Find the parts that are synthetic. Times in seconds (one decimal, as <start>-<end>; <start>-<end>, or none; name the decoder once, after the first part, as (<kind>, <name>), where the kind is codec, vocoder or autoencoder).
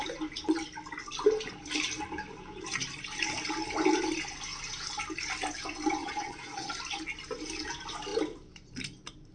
6.0-6.7 (vocoder, Vocos)